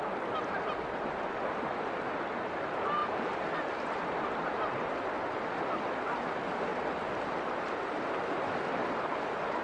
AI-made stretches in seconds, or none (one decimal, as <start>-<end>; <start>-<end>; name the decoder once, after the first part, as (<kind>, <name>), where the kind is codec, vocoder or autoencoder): 0.0-0.7 (vocoder, BigVGAN v2); 3.0-5.1; 6.7-8.1